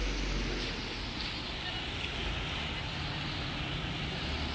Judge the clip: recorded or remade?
recorded